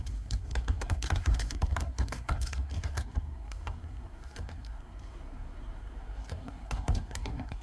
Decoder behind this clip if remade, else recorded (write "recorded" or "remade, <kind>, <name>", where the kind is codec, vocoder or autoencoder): remade, codec, SNAC